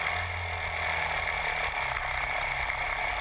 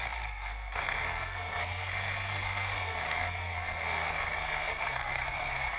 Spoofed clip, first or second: second